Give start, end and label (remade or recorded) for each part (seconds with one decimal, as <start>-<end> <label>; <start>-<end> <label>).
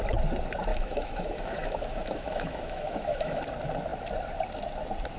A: 0.0-0.7 recorded; 0.7-3.4 remade; 3.4-5.2 recorded